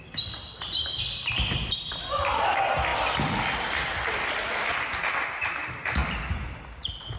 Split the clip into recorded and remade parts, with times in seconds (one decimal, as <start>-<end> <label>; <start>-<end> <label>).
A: 0.0-7.2 recorded